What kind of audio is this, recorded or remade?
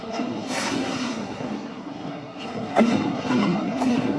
remade